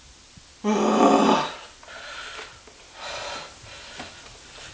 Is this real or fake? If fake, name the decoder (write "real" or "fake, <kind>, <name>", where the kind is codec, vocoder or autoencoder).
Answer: real